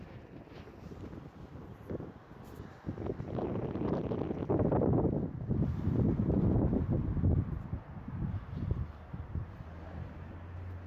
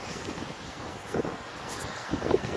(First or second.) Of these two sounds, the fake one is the second